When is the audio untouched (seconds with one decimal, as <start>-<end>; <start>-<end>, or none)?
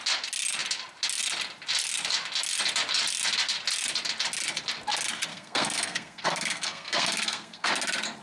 0.0-5.3; 7.7-8.2